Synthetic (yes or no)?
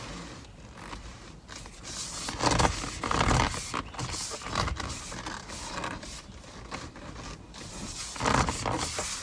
no